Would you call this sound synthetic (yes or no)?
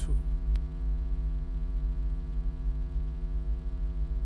yes